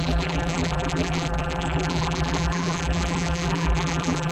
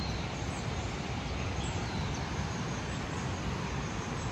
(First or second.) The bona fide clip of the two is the second